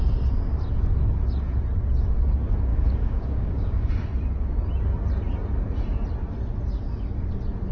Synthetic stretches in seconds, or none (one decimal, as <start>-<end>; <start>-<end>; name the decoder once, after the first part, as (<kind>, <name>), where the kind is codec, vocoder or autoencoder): 2.7-3.8 (codec, DAC)